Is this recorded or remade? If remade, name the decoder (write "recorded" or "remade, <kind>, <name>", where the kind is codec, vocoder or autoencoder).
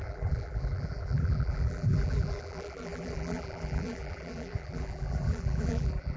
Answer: remade, vocoder, BigVGAN v2